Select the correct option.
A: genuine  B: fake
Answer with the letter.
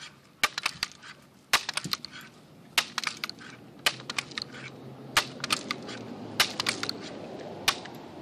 A